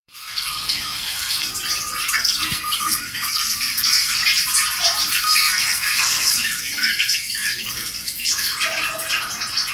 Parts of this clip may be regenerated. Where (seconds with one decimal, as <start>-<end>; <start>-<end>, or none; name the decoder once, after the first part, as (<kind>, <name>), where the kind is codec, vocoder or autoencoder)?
0.0-1.5 (codec, SNAC); 2.1-4.2; 5.2-8.5